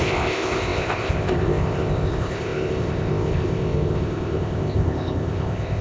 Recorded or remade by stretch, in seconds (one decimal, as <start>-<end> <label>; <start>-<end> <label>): 0.0-5.8 remade